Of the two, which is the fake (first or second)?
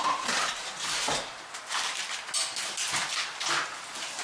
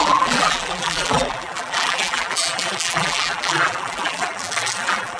second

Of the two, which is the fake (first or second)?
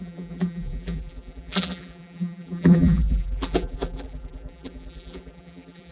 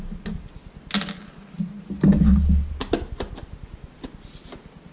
first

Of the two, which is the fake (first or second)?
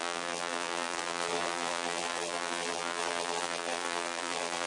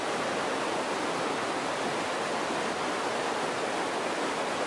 first